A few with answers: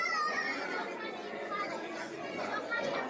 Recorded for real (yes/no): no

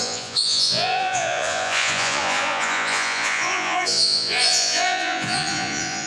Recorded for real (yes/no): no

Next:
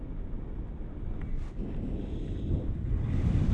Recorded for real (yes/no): yes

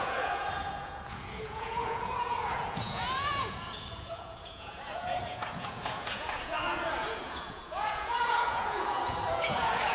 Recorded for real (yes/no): no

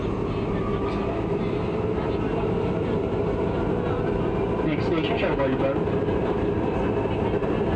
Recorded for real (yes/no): yes